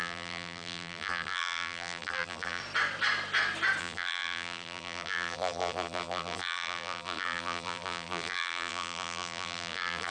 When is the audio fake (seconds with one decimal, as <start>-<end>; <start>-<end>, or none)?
0.0-2.6; 3.8-10.1